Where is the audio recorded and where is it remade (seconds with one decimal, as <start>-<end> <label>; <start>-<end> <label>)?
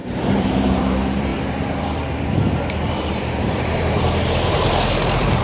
0.0-1.3 remade; 1.3-3.1 recorded; 3.1-5.4 remade